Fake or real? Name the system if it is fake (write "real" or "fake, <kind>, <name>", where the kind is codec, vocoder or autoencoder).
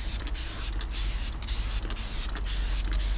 real